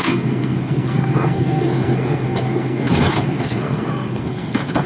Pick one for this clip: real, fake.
fake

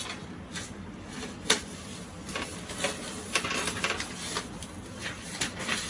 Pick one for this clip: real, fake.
real